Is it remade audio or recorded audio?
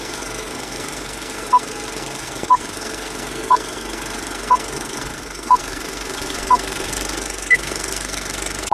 remade